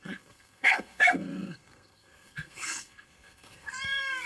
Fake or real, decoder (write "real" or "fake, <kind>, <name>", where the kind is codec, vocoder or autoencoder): fake, codec, SNAC